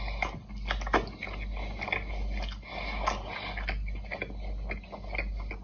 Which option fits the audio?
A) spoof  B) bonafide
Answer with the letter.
B